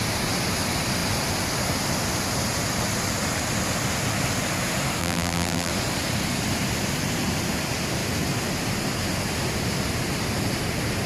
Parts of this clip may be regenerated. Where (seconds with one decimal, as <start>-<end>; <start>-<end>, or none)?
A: 5.0-5.7

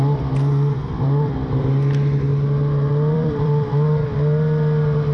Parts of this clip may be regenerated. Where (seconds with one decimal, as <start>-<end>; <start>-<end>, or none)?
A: 0.8-1.6; 2.3-3.7

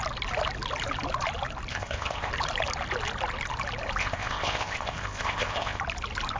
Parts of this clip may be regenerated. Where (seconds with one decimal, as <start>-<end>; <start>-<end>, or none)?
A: 1.7-2.3; 4.0-5.8

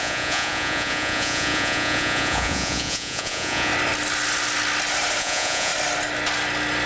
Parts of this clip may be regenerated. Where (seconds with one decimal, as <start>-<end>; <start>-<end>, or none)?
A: 0.0-3.7; 5.2-5.7

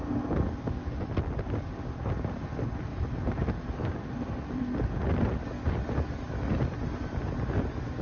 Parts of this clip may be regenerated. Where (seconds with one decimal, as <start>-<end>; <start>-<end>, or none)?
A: 2.9-4.6

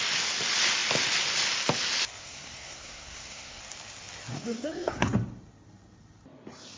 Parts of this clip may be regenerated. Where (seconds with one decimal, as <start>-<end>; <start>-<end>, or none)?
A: 2.2-3.6; 4.3-5.1

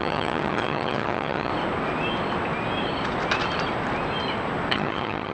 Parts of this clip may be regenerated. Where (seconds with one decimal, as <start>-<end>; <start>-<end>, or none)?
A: 0.0-1.5; 4.7-5.3